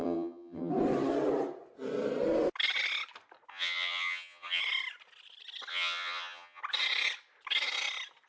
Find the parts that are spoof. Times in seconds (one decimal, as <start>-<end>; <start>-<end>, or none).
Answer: 0.0-0.7; 3.5-4.6; 5.7-6.6